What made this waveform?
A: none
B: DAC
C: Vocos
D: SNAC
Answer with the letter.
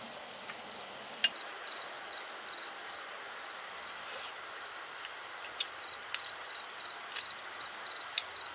A